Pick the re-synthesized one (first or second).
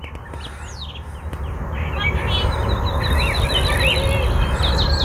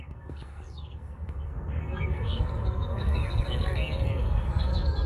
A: second